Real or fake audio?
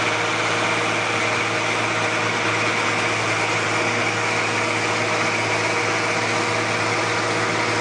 real